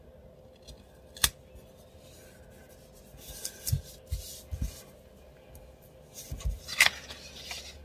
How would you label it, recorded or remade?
recorded